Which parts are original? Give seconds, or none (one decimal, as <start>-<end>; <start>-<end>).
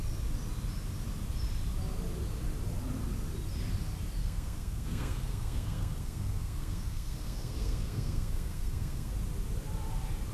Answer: 0.0-4.2; 9.1-10.3